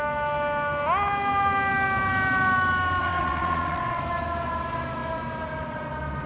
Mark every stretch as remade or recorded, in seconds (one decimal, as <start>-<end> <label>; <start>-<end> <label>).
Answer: 0.0-3.0 recorded; 3.0-4.0 remade; 4.0-6.3 recorded